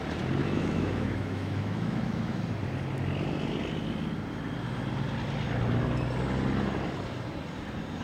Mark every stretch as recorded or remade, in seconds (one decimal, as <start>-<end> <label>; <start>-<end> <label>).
0.0-0.4 recorded; 0.4-2.4 remade; 2.4-8.0 recorded

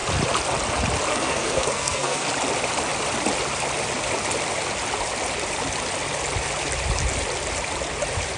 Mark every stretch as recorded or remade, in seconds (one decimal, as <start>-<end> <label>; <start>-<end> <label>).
0.0-1.1 recorded; 1.1-2.3 remade; 2.3-8.4 recorded